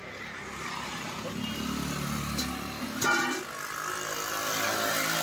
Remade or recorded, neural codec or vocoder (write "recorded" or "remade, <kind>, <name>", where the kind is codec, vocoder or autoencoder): recorded